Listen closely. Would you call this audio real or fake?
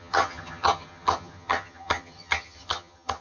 fake